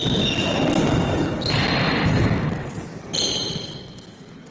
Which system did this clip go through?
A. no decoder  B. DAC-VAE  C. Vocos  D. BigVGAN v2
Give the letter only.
A